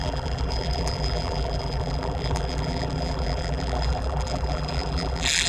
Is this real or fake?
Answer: fake